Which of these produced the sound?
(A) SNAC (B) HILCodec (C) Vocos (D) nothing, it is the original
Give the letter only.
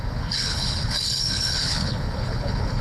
B